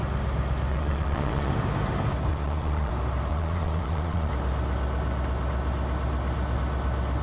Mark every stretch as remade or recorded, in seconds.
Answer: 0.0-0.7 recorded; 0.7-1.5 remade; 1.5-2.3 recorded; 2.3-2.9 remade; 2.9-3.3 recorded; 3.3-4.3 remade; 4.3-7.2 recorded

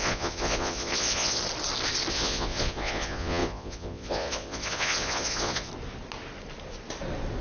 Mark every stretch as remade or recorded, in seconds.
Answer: 0.0-1.4 remade; 1.4-2.1 recorded; 2.1-5.7 remade; 5.7-7.4 recorded

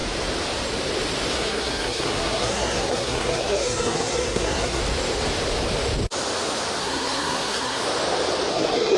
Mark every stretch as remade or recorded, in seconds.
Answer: 0.0-1.3 recorded; 1.3-4.8 remade; 4.8-6.8 recorded; 6.8-7.8 remade; 7.8-8.5 recorded; 8.5-9.0 remade

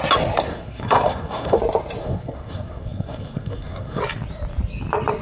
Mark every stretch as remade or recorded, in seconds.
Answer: 0.0-0.5 recorded; 0.5-1.6 remade; 1.6-2.0 recorded; 2.0-4.0 remade; 4.0-5.2 recorded

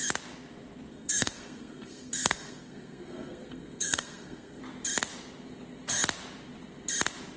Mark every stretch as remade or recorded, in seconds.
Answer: 0.0-0.9 recorded; 0.9-4.6 remade; 4.6-7.4 recorded

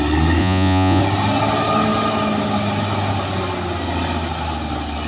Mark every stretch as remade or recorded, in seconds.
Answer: 0.0-0.4 recorded; 0.4-1.0 remade; 1.0-5.1 recorded

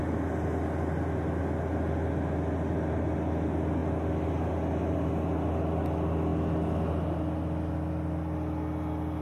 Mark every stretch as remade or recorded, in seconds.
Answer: 0.0-9.2 recorded